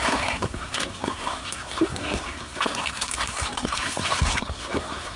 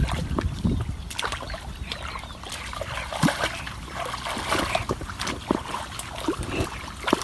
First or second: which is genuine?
second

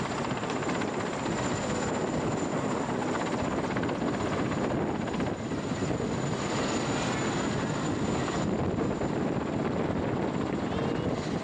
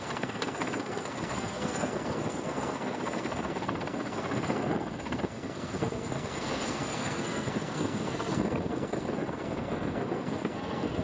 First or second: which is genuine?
first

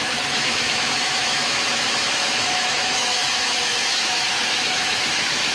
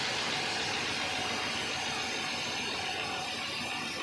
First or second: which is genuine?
second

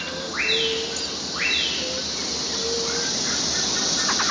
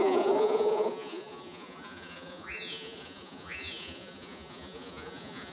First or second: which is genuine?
first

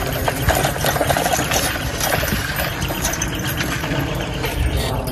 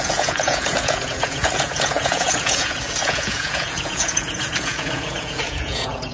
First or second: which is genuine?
first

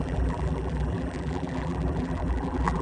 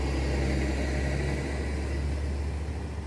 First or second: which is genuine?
second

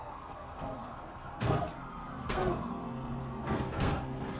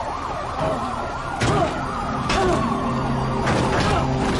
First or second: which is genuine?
second